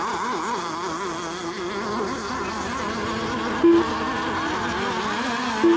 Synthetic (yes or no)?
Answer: no